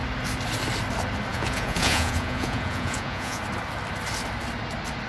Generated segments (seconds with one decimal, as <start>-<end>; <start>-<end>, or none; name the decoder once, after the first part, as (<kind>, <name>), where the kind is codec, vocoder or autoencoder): 1.3-3.4 (vocoder, Vocos)